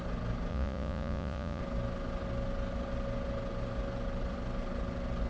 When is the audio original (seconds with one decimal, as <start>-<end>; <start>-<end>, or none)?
0.0-0.5; 1.6-5.3